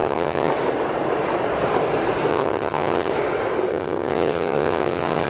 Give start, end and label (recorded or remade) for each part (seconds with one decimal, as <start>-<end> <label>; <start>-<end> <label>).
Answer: 0.0-0.5 remade; 0.5-2.3 recorded; 2.3-3.1 remade; 3.1-3.7 recorded; 3.7-5.3 remade